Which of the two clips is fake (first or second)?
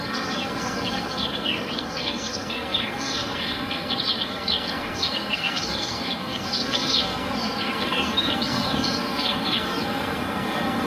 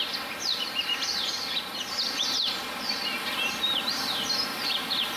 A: first